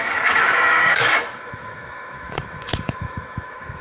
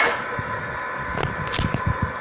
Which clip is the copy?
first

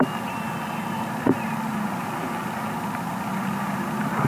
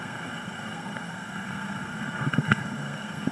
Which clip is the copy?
second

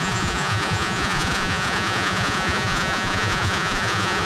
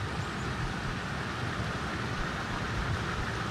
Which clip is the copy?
first